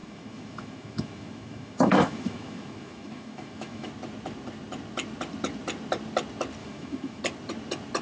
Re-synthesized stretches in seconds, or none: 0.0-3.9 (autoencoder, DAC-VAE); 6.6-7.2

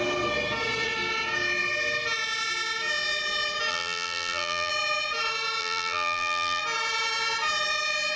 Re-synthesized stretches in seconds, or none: 3.7-4.7 (vocoder, BigVGAN v2); 5.6-6.6

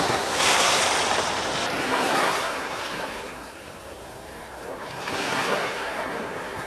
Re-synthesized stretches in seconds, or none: 0.0-0.8 (codec, SNAC); 1.8-6.7

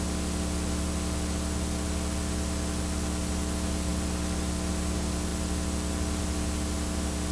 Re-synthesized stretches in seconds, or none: 3.9-4.7 (vocoder, BigVGAN v2); 5.3-6.2